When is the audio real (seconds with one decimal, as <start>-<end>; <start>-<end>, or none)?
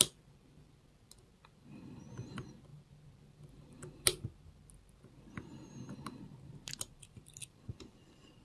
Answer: 0.0-8.4